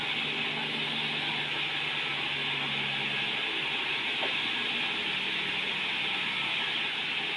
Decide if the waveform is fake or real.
real